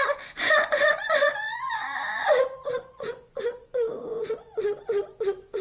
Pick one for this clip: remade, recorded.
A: remade